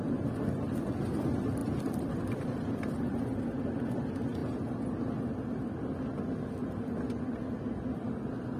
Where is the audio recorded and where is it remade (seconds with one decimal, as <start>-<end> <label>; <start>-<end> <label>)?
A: 0.0-1.6 recorded; 1.6-3.4 remade; 3.4-8.6 recorded